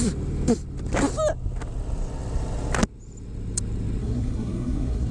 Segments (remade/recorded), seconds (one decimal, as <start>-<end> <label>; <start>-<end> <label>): 0.0-4.0 recorded; 4.0-5.1 remade